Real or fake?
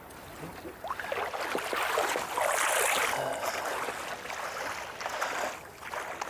real